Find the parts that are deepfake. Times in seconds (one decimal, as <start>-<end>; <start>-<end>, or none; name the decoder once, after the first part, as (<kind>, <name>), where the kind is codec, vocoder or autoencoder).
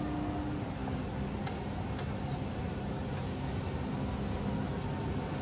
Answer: none